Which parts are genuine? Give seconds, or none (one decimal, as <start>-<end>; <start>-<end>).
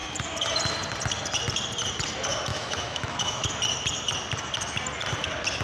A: 0.0-2.5; 3.5-5.6